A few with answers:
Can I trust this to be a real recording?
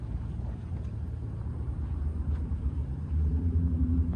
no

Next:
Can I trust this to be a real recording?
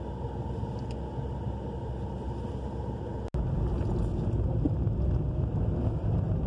yes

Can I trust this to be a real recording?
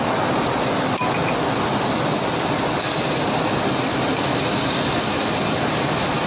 yes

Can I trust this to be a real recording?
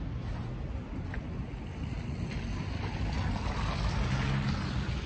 yes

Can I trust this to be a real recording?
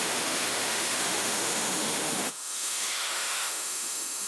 no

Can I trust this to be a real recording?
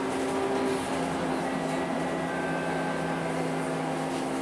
yes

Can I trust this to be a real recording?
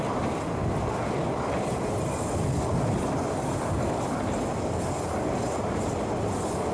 yes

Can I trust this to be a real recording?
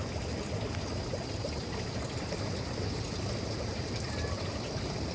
yes